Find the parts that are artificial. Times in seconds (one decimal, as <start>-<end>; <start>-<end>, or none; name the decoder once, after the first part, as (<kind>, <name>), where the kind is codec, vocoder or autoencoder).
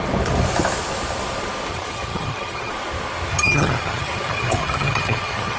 1.7-2.7 (vocoder, HiFi-GAN); 3.3-5.6